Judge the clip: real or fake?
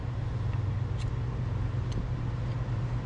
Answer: real